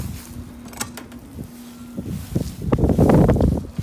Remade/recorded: recorded